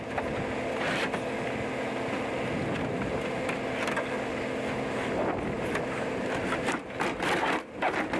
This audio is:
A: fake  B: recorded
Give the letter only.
B